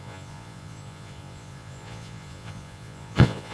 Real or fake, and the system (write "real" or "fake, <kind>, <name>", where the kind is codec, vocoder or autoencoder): fake, vocoder, Vocos